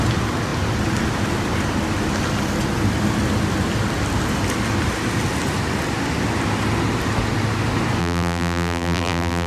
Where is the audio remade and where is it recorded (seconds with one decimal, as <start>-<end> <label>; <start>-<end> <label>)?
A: 0.0-8.0 recorded; 8.0-9.5 remade